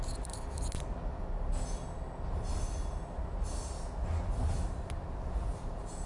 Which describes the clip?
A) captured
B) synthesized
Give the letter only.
A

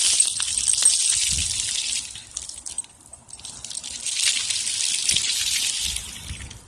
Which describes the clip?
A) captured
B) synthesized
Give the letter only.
A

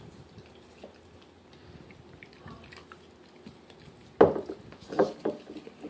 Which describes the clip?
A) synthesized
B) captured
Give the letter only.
B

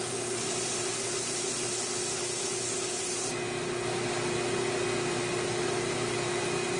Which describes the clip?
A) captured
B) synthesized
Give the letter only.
A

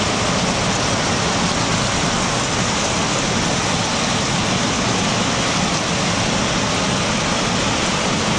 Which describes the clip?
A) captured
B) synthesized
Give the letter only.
A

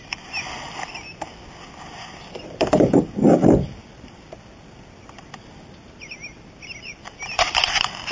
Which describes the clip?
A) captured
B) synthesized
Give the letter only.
A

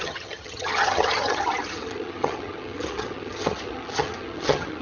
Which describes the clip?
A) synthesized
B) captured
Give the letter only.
A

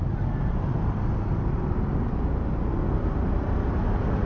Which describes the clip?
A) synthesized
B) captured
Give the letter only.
B